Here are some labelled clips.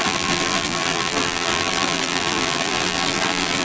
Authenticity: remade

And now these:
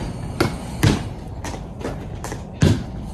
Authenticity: recorded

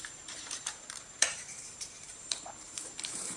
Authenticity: remade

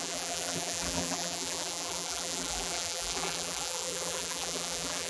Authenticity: remade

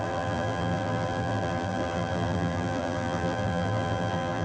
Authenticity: remade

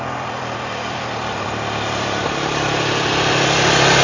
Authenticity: remade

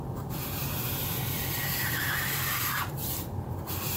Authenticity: remade